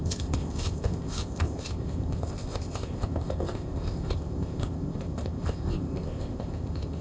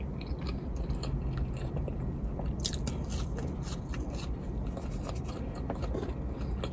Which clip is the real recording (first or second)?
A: second